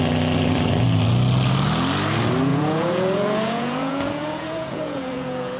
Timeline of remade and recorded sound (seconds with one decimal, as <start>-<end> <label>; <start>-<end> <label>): 0.0-2.5 recorded; 2.5-5.6 remade